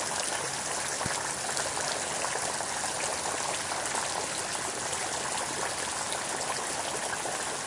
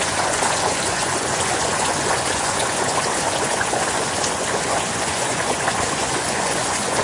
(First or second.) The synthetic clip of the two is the second